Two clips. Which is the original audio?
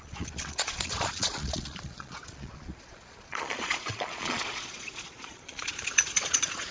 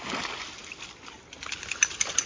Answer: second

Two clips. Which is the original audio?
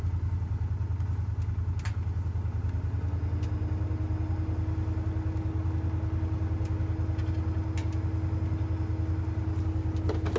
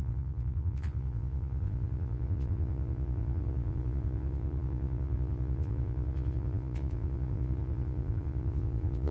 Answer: first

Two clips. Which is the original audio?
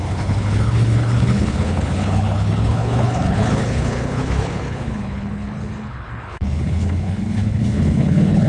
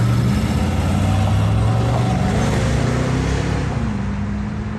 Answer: second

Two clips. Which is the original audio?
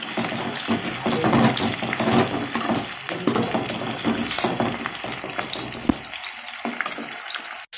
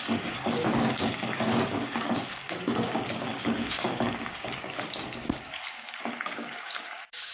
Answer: first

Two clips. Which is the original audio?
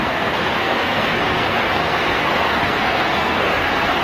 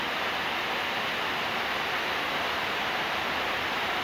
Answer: second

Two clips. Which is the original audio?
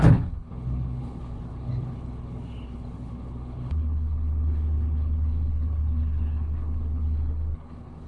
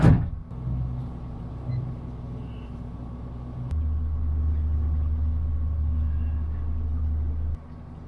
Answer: second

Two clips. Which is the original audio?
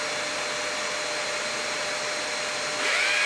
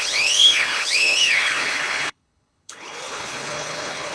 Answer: first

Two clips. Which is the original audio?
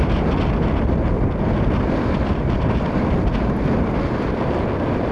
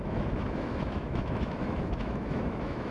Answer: first